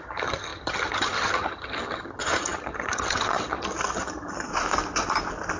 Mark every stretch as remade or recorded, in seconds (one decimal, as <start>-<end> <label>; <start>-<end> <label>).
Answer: 0.0-4.5 remade; 4.5-5.6 recorded